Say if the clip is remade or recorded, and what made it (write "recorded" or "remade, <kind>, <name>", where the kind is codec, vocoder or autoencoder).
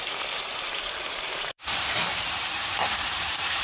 remade, vocoder, BigVGAN v2